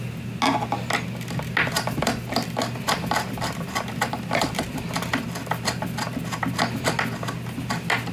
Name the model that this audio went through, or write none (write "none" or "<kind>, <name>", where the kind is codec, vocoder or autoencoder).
none